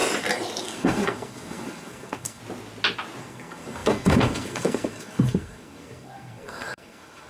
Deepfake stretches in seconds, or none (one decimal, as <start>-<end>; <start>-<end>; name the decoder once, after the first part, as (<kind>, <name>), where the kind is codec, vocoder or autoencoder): 0.6-2.4 (codec, SNAC); 3.2-7.3